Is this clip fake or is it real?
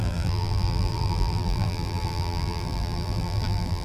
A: fake